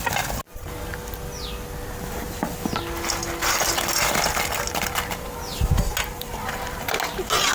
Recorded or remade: recorded